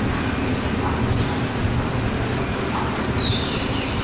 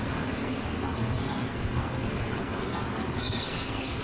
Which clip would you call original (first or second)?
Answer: first